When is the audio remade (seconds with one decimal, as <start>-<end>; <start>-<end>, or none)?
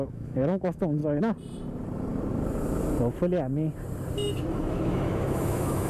0.0-1.0; 4.5-5.9